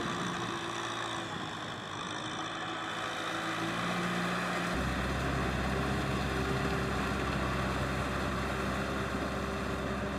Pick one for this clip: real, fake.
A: real